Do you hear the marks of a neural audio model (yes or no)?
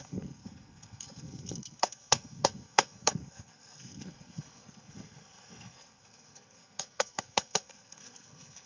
yes